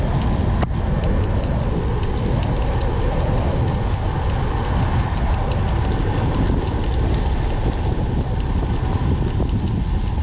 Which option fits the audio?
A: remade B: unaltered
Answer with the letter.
B